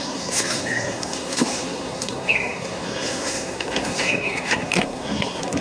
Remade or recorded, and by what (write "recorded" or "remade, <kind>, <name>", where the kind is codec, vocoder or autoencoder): remade, codec, SNAC